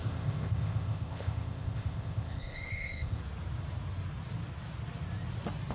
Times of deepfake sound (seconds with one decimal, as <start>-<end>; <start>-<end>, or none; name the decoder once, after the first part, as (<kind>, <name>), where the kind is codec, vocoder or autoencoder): 0.0-3.2 (codec, ZipCodec)